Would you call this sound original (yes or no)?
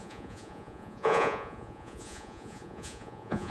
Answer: no